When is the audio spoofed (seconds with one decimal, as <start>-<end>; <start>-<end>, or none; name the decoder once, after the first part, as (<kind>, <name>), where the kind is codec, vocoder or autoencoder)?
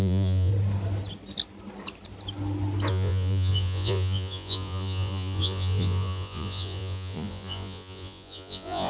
0.0-0.5 (vocoder, Vocos); 2.9-8.9